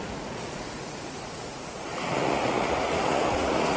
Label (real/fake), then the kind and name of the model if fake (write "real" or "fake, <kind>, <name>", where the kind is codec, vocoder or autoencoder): fake, vocoder, Vocos